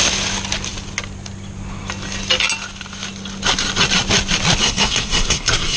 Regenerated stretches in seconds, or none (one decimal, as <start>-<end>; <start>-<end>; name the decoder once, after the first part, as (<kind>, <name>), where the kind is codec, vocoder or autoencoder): 4.6-5.8 (codec, SNAC)